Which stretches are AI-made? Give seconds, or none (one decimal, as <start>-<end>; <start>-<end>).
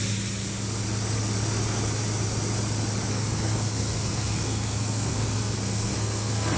3.1-6.6